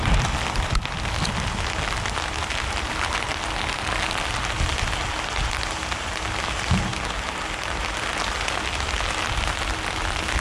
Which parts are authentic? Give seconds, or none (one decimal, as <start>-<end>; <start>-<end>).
0.0-10.4